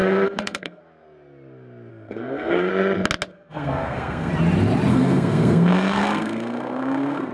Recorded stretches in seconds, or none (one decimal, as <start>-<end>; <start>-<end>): 0.8-1.9; 2.7-3.3; 4.3-4.9